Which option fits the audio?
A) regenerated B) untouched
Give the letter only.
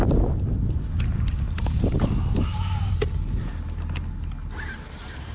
B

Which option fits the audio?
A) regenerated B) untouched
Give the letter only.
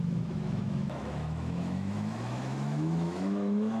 A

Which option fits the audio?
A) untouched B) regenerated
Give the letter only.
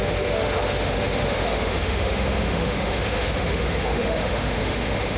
B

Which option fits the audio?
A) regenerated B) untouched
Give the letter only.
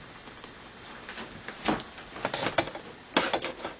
B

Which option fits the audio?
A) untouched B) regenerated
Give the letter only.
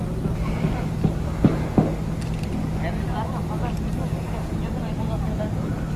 A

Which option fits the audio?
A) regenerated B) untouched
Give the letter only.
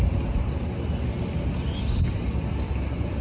B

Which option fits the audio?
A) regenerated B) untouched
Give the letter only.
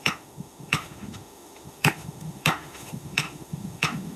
A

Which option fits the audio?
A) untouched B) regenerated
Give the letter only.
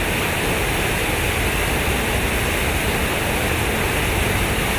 A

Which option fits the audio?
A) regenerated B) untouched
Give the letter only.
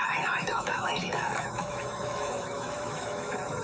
A